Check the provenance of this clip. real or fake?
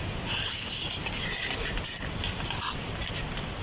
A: real